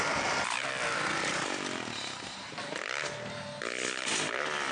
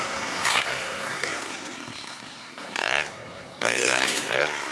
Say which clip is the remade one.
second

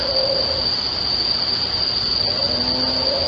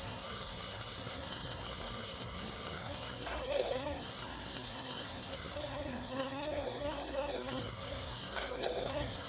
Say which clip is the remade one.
second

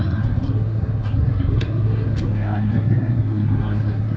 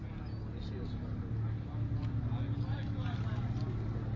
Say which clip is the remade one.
first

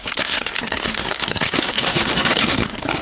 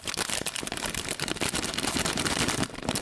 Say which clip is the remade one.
first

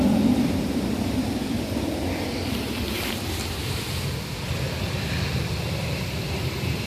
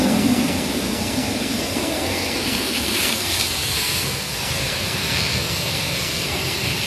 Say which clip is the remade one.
second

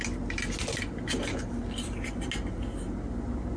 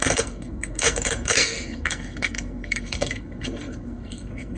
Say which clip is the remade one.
second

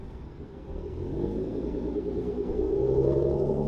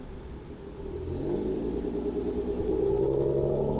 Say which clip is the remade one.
first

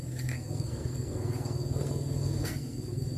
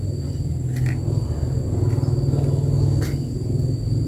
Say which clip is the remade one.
first